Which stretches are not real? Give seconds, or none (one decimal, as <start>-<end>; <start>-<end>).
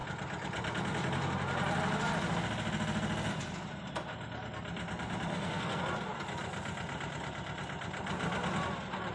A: 5.3-5.8